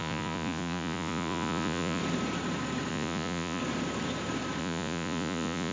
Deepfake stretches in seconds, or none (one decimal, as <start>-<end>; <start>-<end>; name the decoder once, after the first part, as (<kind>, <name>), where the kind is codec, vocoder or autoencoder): 0.0-2.0 (vocoder, Vocos); 2.9-3.6; 4.6-5.7